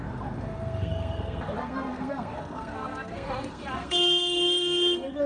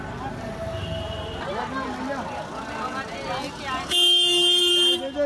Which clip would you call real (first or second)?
second